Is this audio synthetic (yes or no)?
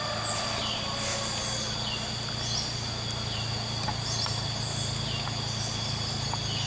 no